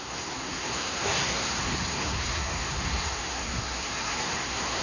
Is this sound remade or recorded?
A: remade